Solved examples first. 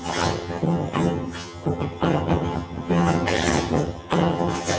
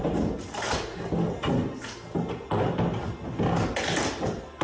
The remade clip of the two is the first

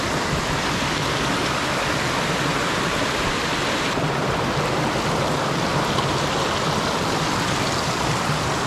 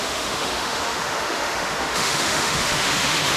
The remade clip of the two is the second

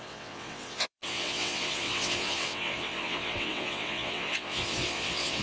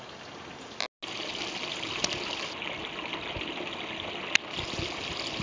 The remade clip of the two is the first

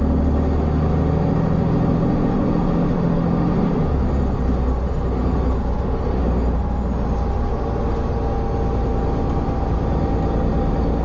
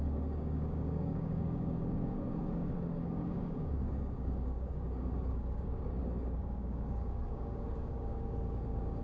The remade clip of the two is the second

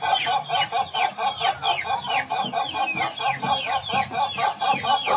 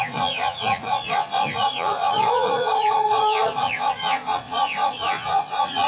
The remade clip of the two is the second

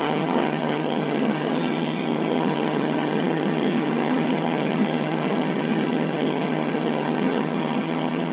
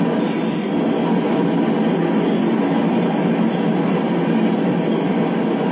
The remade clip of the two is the first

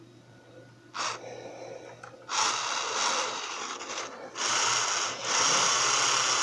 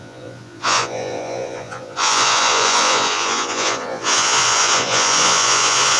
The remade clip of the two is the second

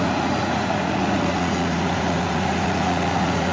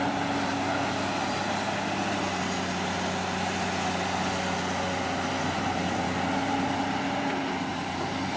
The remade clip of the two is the first